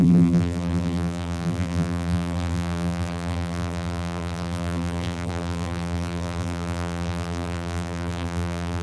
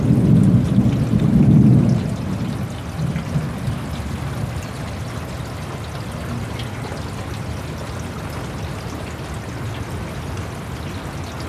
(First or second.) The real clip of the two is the second